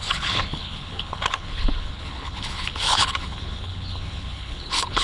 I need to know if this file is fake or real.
fake